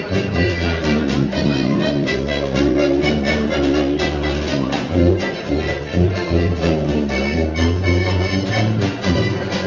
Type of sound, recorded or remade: remade